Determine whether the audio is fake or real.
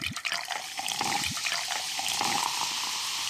real